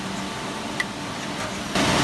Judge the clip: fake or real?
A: real